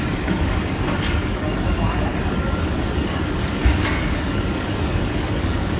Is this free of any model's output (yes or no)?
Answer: no